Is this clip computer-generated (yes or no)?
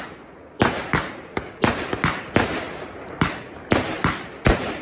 no